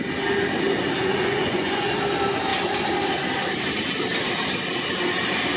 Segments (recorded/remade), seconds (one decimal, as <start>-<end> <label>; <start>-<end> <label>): 0.0-1.0 recorded; 1.0-2.0 remade; 2.0-5.6 recorded